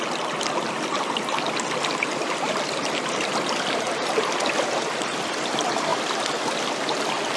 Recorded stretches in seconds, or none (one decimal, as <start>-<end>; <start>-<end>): 0.0-7.4